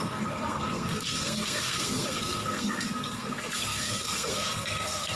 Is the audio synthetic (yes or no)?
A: yes